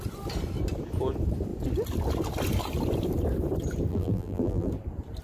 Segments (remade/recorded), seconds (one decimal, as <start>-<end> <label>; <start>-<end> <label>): 0.0-3.9 recorded; 3.9-4.7 remade; 4.7-5.2 recorded